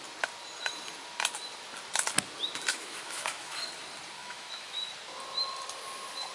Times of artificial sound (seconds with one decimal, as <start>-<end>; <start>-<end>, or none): 2.7-3.7; 4.2-4.9